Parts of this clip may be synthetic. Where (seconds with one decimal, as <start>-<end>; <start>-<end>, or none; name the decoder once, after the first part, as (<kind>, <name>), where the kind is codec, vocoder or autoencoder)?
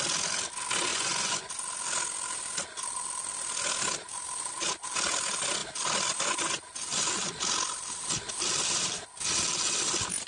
0.9-1.5 (vocoder, Vocos)